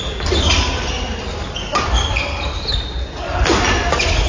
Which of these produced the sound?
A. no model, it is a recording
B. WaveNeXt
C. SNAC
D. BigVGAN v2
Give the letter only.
A